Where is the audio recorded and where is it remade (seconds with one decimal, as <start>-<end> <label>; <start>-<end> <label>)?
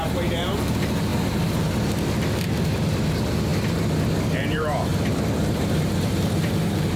0.0-4.9 remade; 4.9-5.4 recorded; 5.4-7.0 remade